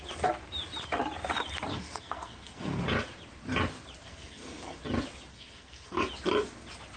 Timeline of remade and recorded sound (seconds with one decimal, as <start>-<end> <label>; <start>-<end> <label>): 0.0-1.7 recorded; 1.7-2.8 remade; 2.8-4.0 recorded; 4.0-4.8 remade; 4.8-5.3 recorded; 5.3-6.0 remade; 6.0-7.0 recorded